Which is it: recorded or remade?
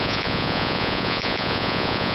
remade